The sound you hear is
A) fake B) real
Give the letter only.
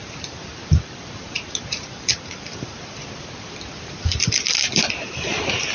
A